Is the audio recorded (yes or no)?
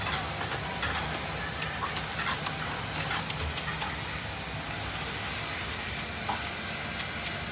yes